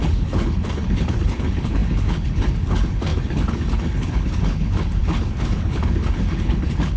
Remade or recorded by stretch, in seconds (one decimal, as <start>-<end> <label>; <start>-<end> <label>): 0.0-7.0 remade